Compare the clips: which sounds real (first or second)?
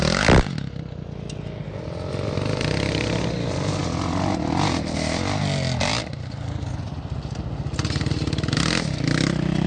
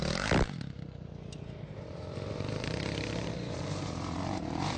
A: first